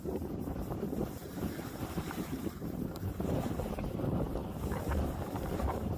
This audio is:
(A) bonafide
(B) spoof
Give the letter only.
B